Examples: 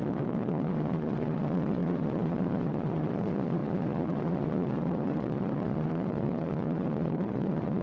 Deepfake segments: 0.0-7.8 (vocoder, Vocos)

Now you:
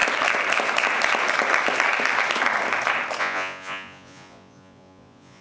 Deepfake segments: 3.2-5.4 (vocoder, Vocos)